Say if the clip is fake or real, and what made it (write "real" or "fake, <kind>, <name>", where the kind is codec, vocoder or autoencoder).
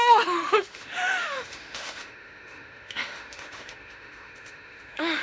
fake, autoencoder, DAC-VAE